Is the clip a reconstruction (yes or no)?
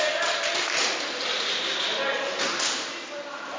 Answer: no